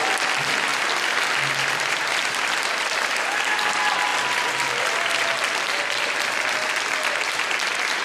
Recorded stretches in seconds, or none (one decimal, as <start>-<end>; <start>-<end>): 0.0-8.0